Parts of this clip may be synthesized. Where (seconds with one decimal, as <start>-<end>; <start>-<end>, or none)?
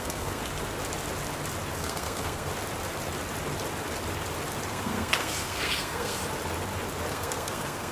0.0-0.4; 1.8-2.5; 4.7-6.2; 7.1-7.9